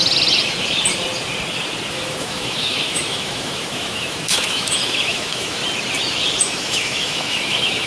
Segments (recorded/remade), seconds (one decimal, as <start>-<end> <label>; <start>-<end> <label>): 0.0-1.9 recorded; 1.9-5.6 remade; 5.6-6.4 recorded; 6.4-7.9 remade

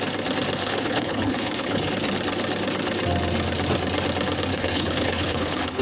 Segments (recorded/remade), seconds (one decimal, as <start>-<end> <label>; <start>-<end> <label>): 0.0-0.6 recorded; 0.6-1.9 remade; 1.9-4.5 recorded; 4.5-5.8 remade

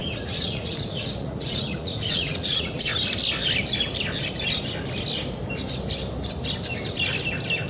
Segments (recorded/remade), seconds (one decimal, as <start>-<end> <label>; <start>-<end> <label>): 0.0-2.9 remade; 2.9-7.7 recorded

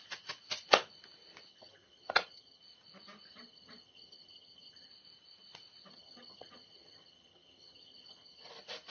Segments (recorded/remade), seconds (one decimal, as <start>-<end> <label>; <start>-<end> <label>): 0.0-1.5 recorded; 1.5-2.6 remade; 2.6-3.3 recorded; 3.3-4.9 remade; 4.9-5.9 recorded; 5.9-8.5 remade; 8.5-8.9 recorded